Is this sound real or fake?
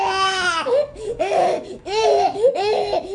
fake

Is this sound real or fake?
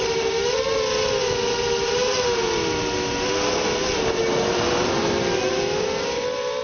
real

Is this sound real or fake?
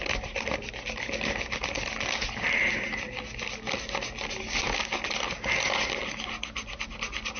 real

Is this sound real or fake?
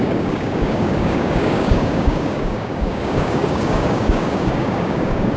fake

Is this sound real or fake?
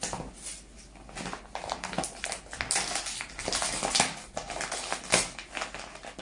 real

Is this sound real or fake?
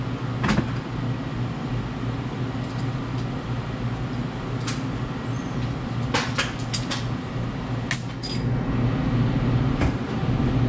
real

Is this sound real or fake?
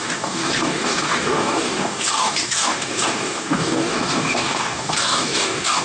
fake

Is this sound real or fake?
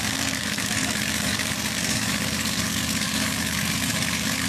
fake